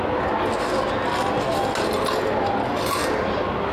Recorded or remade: recorded